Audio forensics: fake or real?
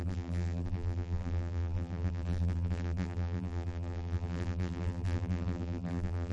fake